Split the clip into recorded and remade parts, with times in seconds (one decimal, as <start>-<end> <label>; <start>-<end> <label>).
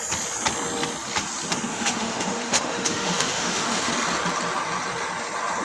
0.0-1.7 recorded; 1.7-3.9 remade; 3.9-5.6 recorded